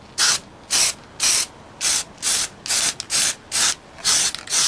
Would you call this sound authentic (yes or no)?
yes